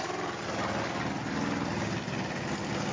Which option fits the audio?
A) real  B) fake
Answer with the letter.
A